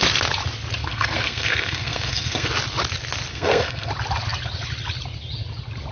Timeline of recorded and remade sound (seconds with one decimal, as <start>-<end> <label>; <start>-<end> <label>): 0.0-0.8 recorded; 0.8-2.5 remade; 2.5-3.3 recorded; 3.3-3.9 remade; 3.9-5.9 recorded